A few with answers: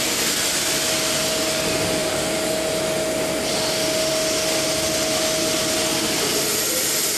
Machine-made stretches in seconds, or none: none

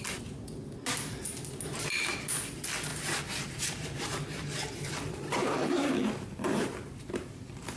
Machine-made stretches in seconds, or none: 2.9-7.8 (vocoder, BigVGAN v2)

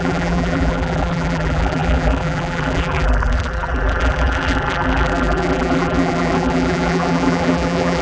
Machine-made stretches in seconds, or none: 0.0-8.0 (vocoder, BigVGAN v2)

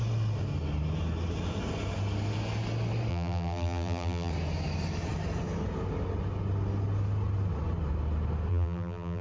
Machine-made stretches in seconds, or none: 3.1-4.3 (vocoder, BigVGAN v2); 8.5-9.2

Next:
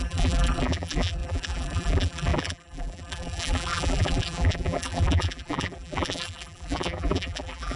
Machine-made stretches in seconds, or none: 0.0-7.8 (vocoder, BigVGAN v2)

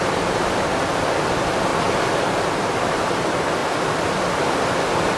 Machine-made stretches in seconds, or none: 0.0-0.8 (vocoder, BigVGAN v2); 1.7-3.0

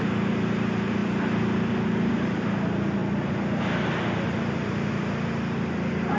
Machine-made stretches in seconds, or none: 1.0-2.1 (vocoder, BigVGAN v2)